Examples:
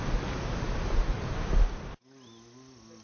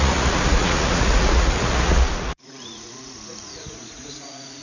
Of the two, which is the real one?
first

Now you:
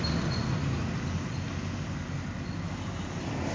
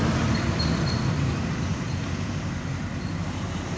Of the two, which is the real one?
first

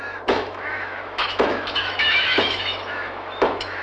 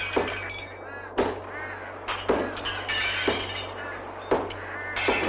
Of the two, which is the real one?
second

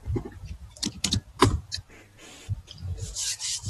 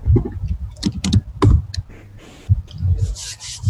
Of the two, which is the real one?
second